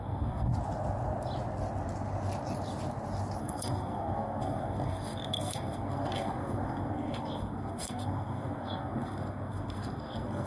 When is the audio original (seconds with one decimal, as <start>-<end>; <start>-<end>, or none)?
0.5-3.4